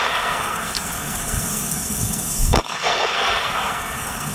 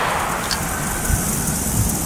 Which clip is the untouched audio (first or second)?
second